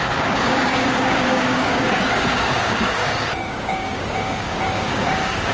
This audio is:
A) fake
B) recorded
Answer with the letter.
A